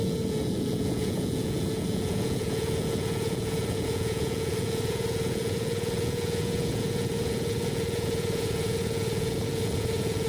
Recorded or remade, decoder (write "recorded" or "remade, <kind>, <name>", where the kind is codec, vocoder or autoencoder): remade, vocoder, Vocos